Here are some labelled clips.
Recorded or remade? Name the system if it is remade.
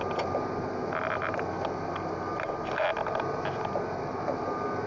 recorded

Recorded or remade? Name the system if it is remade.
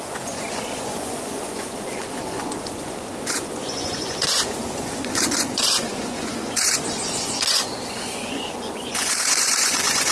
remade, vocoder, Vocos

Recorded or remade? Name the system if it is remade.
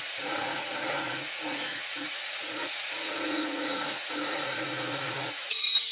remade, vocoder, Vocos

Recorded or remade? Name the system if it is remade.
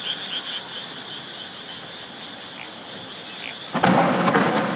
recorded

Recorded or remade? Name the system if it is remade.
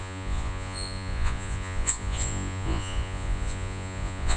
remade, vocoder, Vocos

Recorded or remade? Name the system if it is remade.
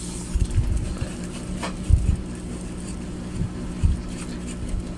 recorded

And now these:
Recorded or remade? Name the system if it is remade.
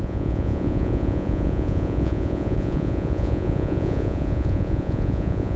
remade, vocoder, Vocos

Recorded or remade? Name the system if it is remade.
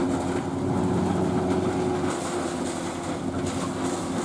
recorded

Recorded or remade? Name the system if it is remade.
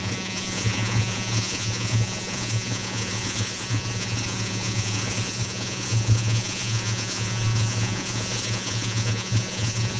remade, vocoder, Vocos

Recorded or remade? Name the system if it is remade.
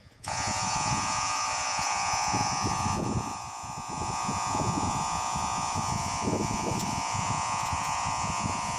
remade, vocoder, Vocos